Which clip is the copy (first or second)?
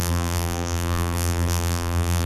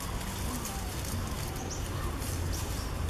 first